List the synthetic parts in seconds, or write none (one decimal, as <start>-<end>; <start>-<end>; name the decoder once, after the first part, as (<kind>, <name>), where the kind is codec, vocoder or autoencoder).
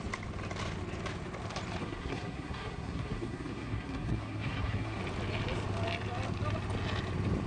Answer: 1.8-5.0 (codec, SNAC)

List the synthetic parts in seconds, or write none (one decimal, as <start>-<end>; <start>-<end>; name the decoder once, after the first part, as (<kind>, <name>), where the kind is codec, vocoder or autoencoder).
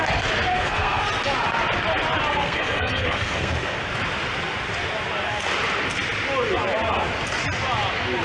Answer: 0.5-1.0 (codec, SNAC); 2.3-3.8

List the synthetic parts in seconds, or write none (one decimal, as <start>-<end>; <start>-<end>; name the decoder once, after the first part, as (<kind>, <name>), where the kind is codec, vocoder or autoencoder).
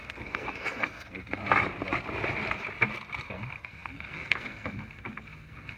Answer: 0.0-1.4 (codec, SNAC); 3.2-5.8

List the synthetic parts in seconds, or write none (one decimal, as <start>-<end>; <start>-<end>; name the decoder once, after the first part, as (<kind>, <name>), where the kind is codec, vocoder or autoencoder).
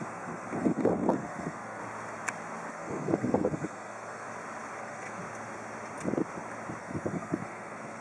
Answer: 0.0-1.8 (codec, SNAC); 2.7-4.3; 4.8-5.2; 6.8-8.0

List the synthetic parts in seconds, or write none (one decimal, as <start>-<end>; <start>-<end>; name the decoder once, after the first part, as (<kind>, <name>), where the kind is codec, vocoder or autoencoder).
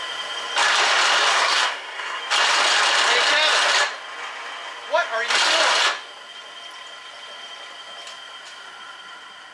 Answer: 1.3-2.2 (codec, SNAC)